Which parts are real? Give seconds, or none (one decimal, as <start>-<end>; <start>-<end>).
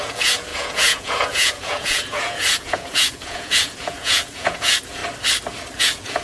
5.0-5.8